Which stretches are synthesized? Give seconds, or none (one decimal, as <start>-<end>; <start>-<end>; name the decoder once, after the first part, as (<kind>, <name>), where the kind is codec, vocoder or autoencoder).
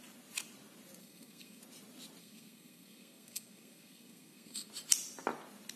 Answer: 1.0-1.6 (codec, SNAC); 2.2-4.7